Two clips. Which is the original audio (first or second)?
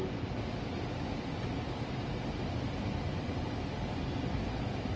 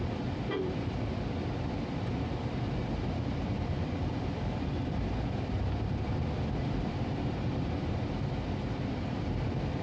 first